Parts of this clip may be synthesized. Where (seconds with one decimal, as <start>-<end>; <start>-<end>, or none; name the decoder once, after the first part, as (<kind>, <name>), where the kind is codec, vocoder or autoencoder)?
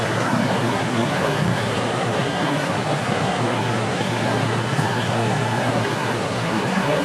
0.0-7.0 (codec, SNAC)